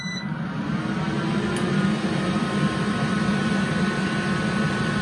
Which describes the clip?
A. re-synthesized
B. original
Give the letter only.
B